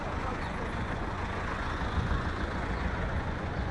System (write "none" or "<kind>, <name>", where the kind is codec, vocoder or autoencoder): vocoder, Vocos